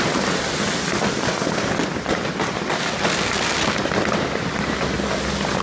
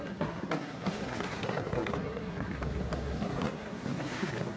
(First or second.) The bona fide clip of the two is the first